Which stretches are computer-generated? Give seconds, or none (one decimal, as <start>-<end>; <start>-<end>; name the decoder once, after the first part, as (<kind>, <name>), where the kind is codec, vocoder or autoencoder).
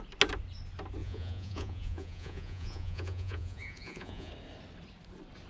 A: 1.0-4.3 (vocoder, Vocos)